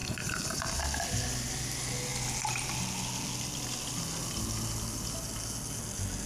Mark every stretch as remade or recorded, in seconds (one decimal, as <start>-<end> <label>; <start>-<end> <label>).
0.0-6.3 recorded